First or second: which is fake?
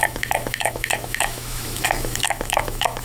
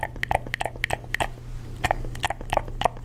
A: first